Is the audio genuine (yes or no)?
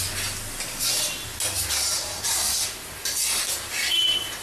yes